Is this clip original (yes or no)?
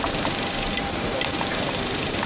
no